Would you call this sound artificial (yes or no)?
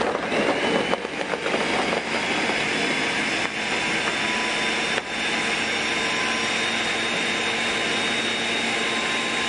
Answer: no